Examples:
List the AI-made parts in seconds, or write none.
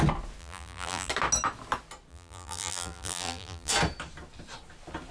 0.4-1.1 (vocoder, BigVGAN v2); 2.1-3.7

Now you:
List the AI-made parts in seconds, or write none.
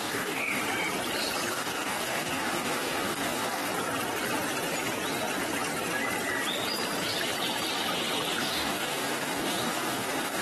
0.0-0.6 (codec, DAC); 1.5-3.7; 8.4-10.4